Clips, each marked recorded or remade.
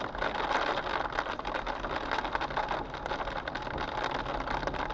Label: recorded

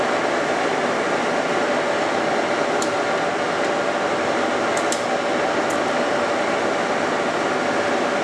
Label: recorded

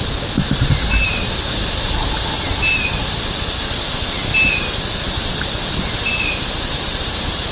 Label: recorded